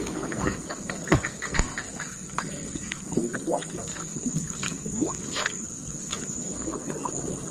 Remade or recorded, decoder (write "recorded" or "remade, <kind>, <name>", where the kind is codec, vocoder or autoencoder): remade, codec, SNAC